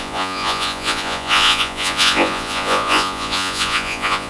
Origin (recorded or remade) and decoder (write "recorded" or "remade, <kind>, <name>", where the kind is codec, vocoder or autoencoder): remade, vocoder, Vocos